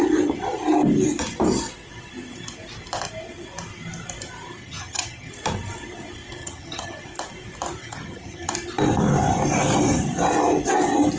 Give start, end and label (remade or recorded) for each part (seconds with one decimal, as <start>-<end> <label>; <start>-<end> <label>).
0.0-4.6 recorded; 4.6-5.3 remade; 5.3-6.4 recorded; 6.4-7.0 remade; 7.0-7.8 recorded; 7.8-8.5 remade; 8.5-11.2 recorded

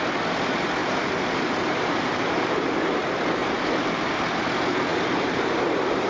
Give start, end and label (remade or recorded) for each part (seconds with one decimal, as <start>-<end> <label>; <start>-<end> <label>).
0.0-0.8 recorded; 0.8-3.0 remade; 3.0-3.4 recorded; 3.4-4.2 remade; 4.2-4.9 recorded; 4.9-6.1 remade

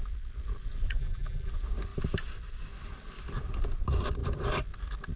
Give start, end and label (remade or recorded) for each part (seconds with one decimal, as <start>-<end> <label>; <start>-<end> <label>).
0.0-1.0 recorded; 1.0-1.5 remade; 1.5-5.2 recorded